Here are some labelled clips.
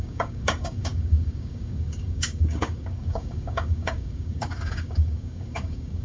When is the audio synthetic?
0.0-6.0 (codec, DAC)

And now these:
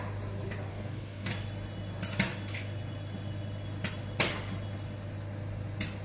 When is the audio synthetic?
0.7-1.3 (codec, DAC)

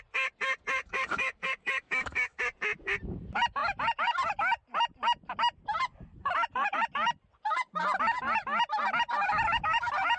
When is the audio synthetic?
0.8-2.4 (codec, DAC)

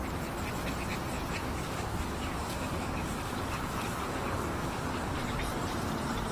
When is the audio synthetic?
1.4-5.2 (codec, DAC)

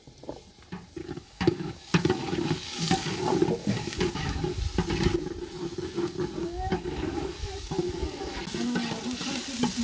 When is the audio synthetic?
1.0-3.2 (codec, DAC); 3.6-4.6; 6.4-8.4